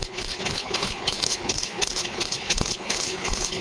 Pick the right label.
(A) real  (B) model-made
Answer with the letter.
B